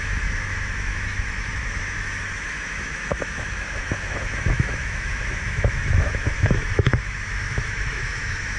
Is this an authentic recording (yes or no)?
no